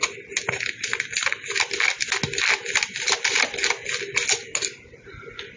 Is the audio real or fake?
real